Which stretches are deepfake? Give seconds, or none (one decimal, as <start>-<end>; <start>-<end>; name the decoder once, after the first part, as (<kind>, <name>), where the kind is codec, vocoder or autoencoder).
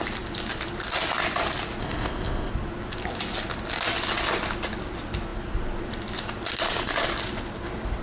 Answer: 1.8-2.5 (codec, ZipCodec)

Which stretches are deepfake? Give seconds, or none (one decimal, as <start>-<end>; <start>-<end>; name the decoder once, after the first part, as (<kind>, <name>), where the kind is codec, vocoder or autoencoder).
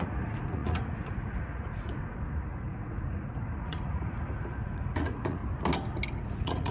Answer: 0.0-5.4 (vocoder, Vocos); 6.2-6.7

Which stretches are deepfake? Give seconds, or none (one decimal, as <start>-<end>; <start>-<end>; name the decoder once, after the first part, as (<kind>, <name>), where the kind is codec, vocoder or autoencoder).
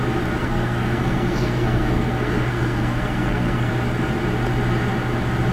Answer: 0.4-3.7 (codec, SNAC)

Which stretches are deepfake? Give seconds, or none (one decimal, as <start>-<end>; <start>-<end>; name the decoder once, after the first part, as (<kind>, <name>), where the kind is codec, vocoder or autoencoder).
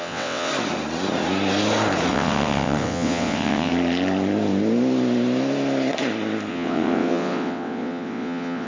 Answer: 0.0-0.5 (vocoder, WaveNeXt); 2.1-3.7; 6.5-8.7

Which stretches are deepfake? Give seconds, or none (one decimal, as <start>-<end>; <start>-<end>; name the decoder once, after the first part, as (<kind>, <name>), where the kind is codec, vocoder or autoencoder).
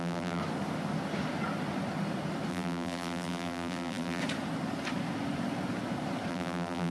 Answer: 0.0-0.4 (vocoder, BigVGAN v2); 2.5-4.2; 6.3-6.9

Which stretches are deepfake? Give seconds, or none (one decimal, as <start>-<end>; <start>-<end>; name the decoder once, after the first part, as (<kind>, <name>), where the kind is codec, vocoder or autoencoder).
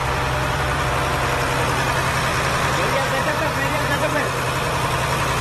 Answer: 0.0-0.9 (vocoder, BigVGAN v2); 2.3-4.2